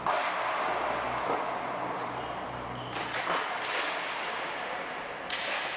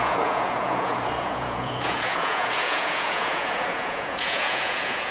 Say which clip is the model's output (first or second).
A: second